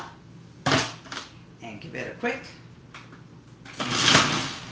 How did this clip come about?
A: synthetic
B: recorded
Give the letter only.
B